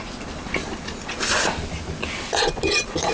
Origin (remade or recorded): recorded